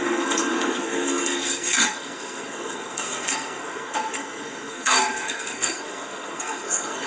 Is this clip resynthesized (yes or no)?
yes